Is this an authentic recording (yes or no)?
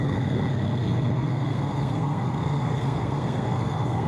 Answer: no